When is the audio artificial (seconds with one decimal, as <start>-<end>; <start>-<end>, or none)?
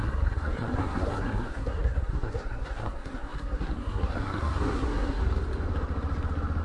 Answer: 0.0-5.2